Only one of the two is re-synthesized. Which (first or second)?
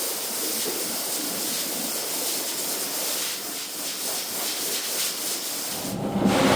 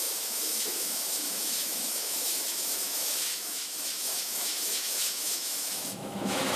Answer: second